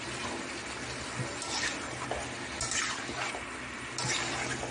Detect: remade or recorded recorded